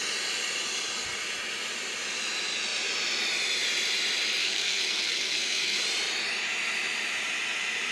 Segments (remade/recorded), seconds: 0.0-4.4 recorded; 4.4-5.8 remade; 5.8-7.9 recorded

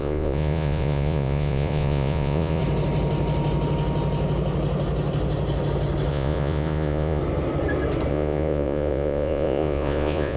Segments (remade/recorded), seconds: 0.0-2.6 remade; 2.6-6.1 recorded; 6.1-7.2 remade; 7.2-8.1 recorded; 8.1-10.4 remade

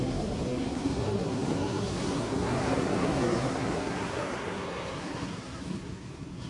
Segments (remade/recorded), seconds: 0.0-6.5 remade

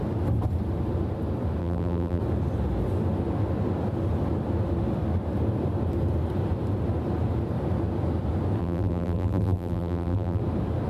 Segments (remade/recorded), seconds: 0.0-1.6 recorded; 1.6-2.2 remade; 2.2-8.6 recorded; 8.6-10.4 remade; 10.4-10.9 recorded